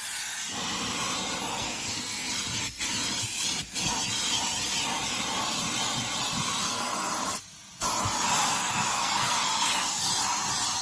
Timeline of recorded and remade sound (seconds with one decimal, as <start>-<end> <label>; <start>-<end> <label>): 0.0-1.5 recorded; 1.5-2.3 remade; 2.3-6.5 recorded; 6.5-7.1 remade; 7.1-8.4 recorded; 8.4-10.1 remade; 10.1-10.8 recorded